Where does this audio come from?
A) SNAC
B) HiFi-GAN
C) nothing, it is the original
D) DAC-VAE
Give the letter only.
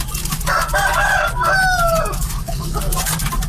C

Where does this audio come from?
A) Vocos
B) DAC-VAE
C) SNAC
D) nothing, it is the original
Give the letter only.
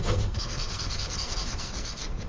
C